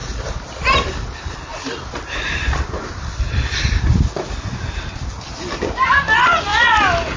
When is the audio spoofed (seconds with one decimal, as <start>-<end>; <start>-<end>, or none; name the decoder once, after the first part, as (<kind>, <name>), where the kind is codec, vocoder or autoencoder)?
none